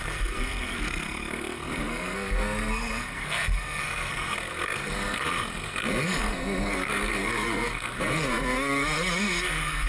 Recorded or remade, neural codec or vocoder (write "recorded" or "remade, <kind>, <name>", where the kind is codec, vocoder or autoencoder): remade, codec, SNAC